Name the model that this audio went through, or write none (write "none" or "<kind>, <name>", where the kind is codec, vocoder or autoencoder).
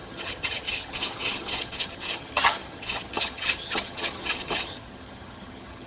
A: vocoder, HiFi-GAN